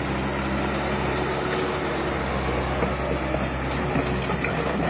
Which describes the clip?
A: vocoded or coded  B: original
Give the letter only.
B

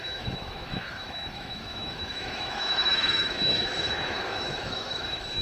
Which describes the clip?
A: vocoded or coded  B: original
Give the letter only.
A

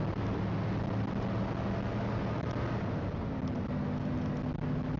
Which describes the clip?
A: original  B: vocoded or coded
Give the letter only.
A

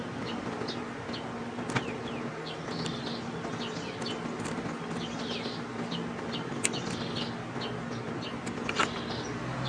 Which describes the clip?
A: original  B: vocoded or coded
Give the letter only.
A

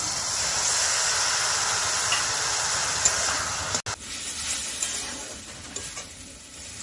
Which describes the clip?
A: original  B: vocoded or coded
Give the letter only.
A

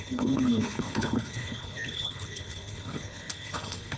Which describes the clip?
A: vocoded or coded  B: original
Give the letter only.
A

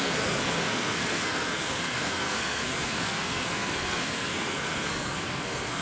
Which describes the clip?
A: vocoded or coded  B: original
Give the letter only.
A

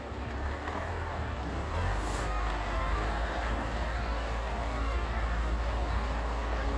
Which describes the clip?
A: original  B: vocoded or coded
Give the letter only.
B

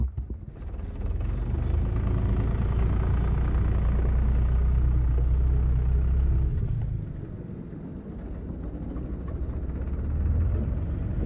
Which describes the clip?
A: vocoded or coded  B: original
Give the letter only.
B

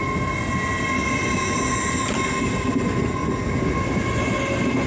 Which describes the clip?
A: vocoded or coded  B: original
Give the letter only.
B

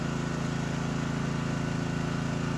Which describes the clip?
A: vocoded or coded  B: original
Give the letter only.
B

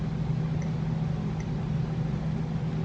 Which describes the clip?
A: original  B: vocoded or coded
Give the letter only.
A